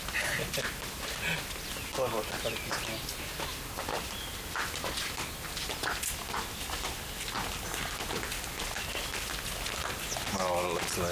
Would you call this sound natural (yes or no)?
yes